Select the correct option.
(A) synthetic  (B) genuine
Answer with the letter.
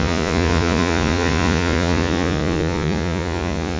A